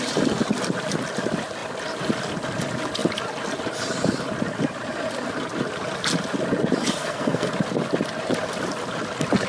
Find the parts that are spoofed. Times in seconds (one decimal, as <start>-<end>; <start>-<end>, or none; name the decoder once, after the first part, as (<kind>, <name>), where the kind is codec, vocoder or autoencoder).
6.9-7.5 (codec, SNAC)